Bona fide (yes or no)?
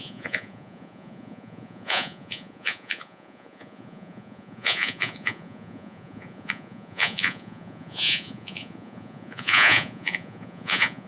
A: no